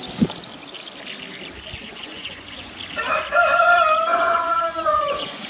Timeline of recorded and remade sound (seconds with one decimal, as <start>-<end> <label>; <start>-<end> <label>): 0.0-1.8 recorded; 1.8-2.7 remade; 2.7-4.1 recorded; 4.1-5.5 remade